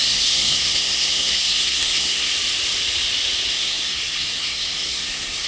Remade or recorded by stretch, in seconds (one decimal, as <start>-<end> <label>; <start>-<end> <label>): 0.0-2.3 remade; 2.3-3.5 recorded; 3.5-5.5 remade